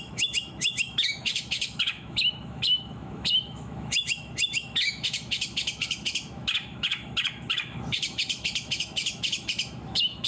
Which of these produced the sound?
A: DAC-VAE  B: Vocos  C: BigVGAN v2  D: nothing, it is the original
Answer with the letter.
A